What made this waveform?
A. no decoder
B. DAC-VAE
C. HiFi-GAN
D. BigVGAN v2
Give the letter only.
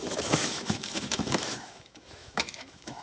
B